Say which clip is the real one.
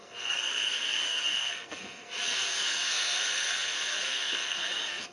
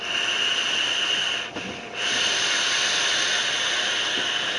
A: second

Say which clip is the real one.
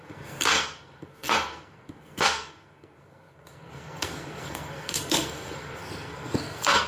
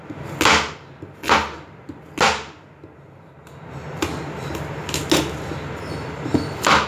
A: second